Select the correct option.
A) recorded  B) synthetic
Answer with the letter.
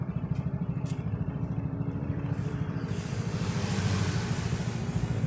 B